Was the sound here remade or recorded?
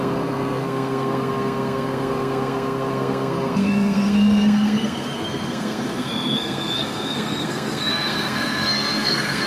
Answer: remade